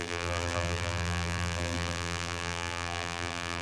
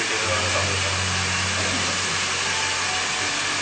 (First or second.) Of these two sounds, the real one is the second